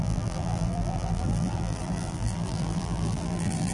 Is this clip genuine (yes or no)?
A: no